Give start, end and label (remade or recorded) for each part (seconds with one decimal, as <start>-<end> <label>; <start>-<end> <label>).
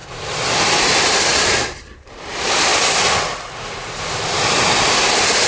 0.0-5.5 recorded